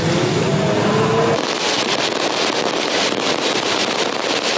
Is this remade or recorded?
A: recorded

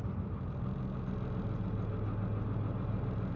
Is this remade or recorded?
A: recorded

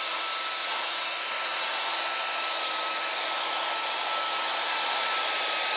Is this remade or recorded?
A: recorded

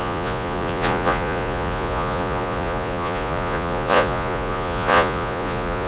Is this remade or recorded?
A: remade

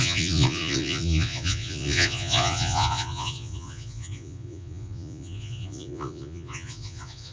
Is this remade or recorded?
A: remade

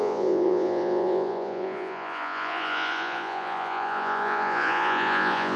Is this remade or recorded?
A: remade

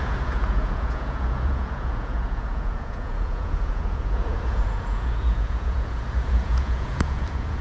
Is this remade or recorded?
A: remade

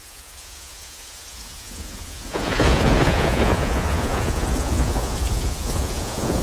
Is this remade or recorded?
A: remade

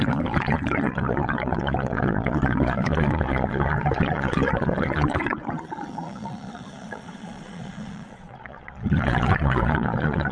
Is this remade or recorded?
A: remade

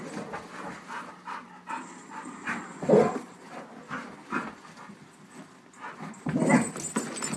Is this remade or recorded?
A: recorded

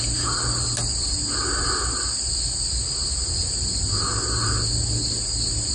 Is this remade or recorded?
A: recorded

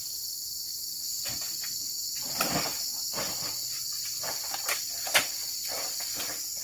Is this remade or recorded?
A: recorded